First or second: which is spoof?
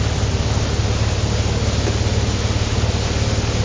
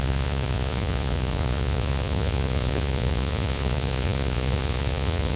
second